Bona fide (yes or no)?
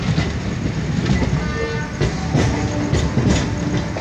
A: yes